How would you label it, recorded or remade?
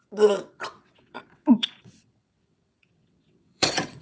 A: remade